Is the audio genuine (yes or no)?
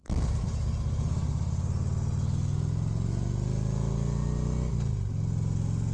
yes